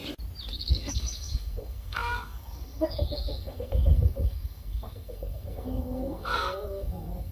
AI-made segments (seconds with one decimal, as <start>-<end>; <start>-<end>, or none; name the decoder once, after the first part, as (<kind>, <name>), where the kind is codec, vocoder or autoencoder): 0.5-7.3 (codec, SNAC)